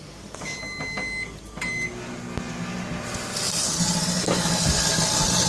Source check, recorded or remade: recorded